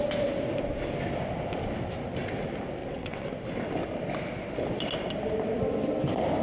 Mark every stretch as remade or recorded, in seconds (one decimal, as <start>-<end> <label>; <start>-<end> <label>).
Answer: 0.0-2.8 recorded; 2.8-3.3 remade; 3.3-6.4 recorded